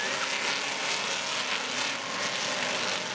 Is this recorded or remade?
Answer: recorded